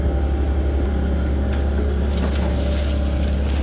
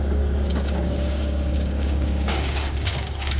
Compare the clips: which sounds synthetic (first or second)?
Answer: second